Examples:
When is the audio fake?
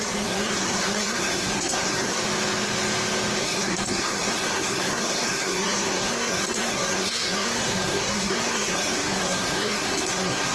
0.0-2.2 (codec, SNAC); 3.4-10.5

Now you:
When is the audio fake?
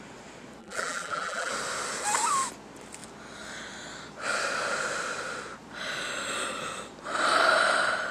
0.6-1.5 (vocoder, BigVGAN v2)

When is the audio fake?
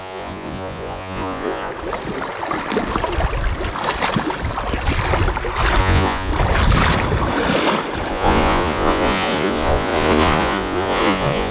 0.0-1.7 (vocoder, Vocos); 5.8-6.3; 8.1-11.5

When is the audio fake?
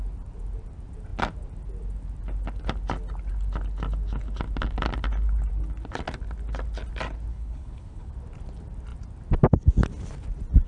7.3-8.1 (codec, HILCodec)